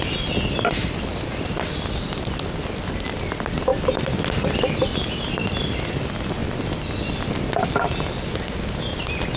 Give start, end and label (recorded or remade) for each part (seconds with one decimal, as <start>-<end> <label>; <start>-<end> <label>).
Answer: 0.0-1.1 recorded; 1.1-2.6 remade; 2.6-3.7 recorded; 3.7-5.3 remade; 5.3-6.4 recorded; 6.4-7.7 remade; 7.7-9.4 recorded